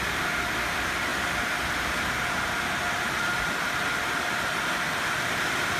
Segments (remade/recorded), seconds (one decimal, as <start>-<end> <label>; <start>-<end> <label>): 0.0-5.8 recorded